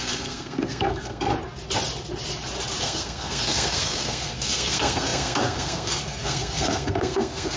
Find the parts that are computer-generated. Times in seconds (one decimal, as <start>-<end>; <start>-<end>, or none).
0.0-1.3; 2.8-7.6